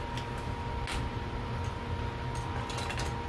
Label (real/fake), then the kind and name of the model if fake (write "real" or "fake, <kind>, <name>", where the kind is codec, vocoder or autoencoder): real